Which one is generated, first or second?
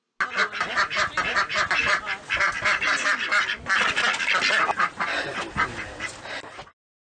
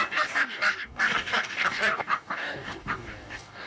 second